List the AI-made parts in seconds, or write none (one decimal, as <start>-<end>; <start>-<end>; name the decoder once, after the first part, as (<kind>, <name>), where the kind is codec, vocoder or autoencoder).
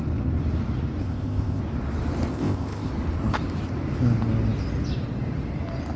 1.0-1.6 (codec, ZipCodec); 2.3-2.9